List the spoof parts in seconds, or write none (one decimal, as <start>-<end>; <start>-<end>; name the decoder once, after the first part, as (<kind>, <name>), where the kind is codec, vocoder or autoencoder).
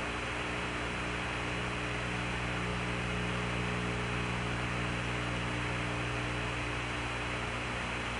none